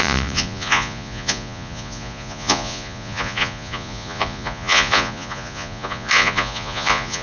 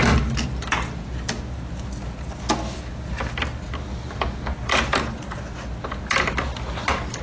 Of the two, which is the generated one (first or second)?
first